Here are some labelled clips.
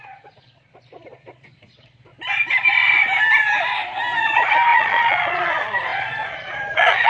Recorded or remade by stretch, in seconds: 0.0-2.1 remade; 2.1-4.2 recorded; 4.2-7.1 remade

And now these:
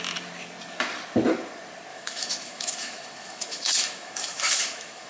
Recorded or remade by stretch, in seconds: 0.0-1.9 recorded; 1.9-5.1 remade

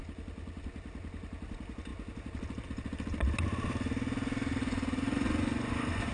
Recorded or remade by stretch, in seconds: 0.0-4.6 recorded; 4.6-6.1 remade

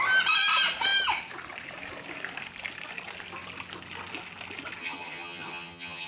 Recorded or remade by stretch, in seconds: 0.0-4.8 recorded; 4.8-6.1 remade

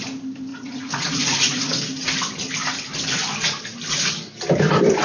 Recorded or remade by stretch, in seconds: 0.0-0.5 recorded; 0.5-1.8 remade; 1.8-5.0 recorded

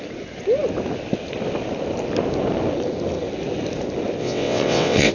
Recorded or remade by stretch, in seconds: 0.0-4.2 recorded; 4.2-5.1 remade

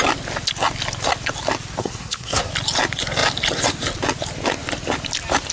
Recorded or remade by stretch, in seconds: 0.0-1.8 recorded; 1.8-2.5 remade; 2.5-5.5 recorded

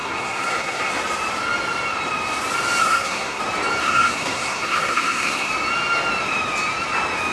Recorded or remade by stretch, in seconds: 0.0-0.9 remade; 0.9-2.8 recorded; 2.8-3.4 remade; 3.4-3.8 recorded; 3.8-5.5 remade; 5.5-7.3 recorded